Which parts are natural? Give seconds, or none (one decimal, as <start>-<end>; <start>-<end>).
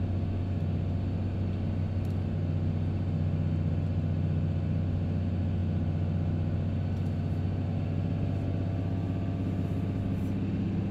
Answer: 0.0-10.9